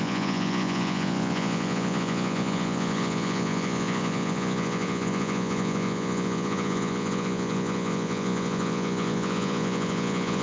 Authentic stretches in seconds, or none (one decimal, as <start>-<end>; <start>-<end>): none

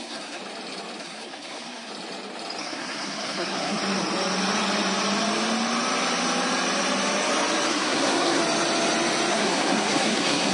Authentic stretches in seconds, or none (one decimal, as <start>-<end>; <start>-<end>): 0.4-1.0; 1.9-2.6; 3.8-7.7; 8.4-9.3

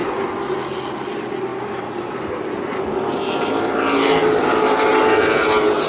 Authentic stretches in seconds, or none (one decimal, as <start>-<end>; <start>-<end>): 0.0-5.9

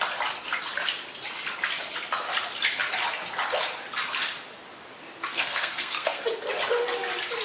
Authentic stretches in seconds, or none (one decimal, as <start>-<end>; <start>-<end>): 0.0-5.3; 6.2-7.4